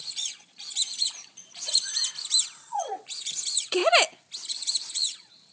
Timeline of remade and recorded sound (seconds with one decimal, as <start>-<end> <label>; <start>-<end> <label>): 0.0-1.9 remade; 1.9-2.6 recorded; 2.6-3.8 remade; 3.8-4.5 recorded; 4.5-5.5 remade

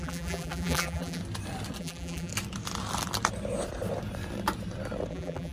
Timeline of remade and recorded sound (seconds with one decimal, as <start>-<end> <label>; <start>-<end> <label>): 0.0-1.2 remade; 1.2-1.8 recorded; 1.8-2.3 remade; 2.3-5.1 recorded; 5.1-5.5 remade

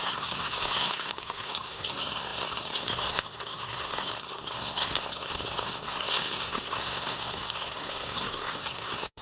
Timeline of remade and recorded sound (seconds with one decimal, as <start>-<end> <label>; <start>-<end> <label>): 0.0-9.2 remade

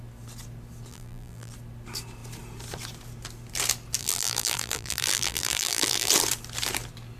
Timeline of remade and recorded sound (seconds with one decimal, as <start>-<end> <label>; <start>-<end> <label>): 0.0-0.9 recorded; 0.9-1.5 remade; 1.5-4.0 recorded; 4.0-6.1 remade; 6.1-7.2 recorded

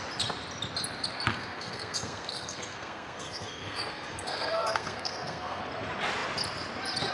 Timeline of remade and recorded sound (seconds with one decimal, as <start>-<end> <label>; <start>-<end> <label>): 0.0-1.3 recorded; 1.3-5.6 remade; 5.6-7.1 recorded